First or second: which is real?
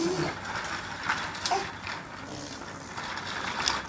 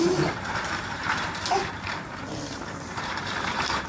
first